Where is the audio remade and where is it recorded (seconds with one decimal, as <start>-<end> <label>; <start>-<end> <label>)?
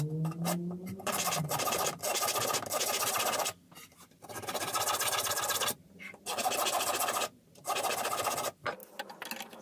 0.0-9.6 recorded